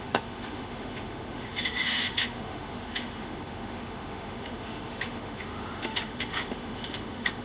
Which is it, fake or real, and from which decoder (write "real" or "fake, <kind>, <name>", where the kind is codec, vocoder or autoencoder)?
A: fake, autoencoder, DAC-VAE